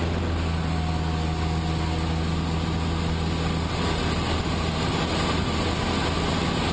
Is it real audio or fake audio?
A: real